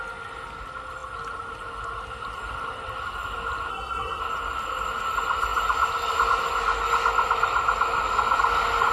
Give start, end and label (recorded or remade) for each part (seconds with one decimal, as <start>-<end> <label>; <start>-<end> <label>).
0.0-3.7 recorded; 3.7-4.2 remade; 4.2-8.9 recorded